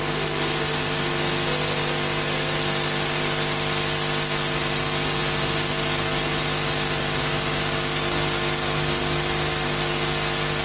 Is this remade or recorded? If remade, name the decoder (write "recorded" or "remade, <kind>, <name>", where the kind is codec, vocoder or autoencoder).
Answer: recorded